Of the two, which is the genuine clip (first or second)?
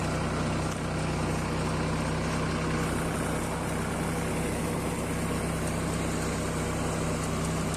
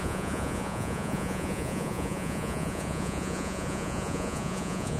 first